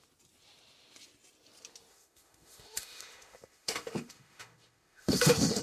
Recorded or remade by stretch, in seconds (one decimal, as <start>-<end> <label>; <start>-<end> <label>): 0.0-1.9 recorded; 1.9-5.6 remade